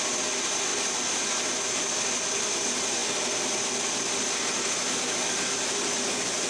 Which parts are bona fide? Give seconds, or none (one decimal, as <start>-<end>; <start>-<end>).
0.0-6.5